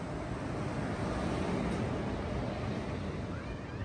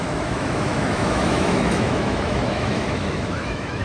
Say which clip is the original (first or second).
first